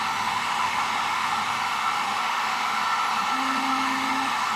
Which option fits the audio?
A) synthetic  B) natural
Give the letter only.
A